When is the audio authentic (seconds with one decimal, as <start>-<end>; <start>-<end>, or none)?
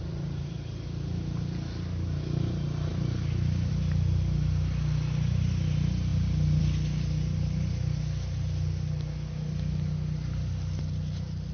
0.0-11.5